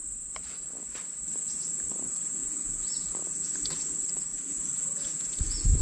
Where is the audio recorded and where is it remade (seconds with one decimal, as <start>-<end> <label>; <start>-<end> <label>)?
0.0-1.9 recorded; 1.9-5.8 remade

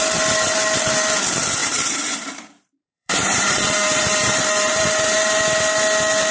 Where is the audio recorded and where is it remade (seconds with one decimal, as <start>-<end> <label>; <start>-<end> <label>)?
0.0-1.6 recorded; 1.6-5.4 remade; 5.4-6.3 recorded

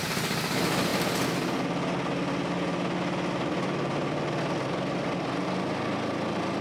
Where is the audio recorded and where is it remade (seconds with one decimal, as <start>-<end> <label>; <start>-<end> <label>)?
0.0-6.6 recorded

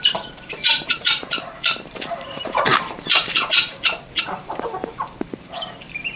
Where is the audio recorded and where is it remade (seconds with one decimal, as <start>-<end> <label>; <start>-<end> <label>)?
0.0-6.2 remade

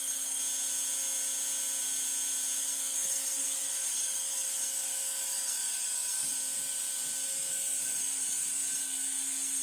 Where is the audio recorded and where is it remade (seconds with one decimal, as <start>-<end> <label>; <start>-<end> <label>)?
0.0-0.4 remade; 0.4-2.6 recorded; 2.6-6.3 remade; 6.3-7.5 recorded; 7.5-9.6 remade

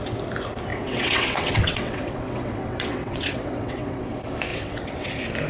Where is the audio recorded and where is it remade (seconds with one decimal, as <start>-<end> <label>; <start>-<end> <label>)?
0.0-0.7 recorded; 0.7-4.0 remade; 4.0-4.5 recorded; 4.5-5.1 remade; 5.1-5.5 recorded